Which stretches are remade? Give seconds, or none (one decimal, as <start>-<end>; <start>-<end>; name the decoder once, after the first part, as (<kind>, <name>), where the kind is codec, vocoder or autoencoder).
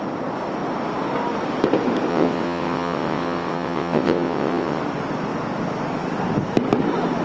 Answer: 2.1-4.8 (vocoder, WaveNeXt)